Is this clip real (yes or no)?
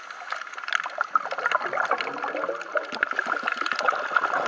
yes